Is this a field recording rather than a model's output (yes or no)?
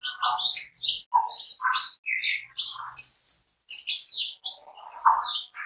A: yes